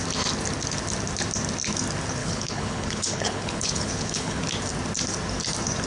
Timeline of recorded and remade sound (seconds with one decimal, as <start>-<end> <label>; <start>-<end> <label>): 0.0-2.2 recorded; 2.2-4.4 remade; 4.4-5.9 recorded